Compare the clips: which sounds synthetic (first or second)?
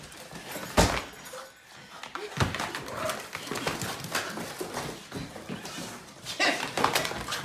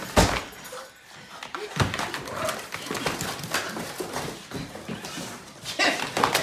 second